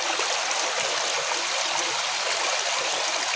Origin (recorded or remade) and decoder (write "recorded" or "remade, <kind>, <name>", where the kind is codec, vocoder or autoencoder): recorded